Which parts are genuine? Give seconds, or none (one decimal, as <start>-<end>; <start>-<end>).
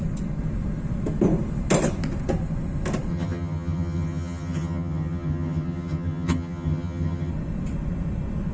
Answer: 0.0-3.1; 7.3-8.5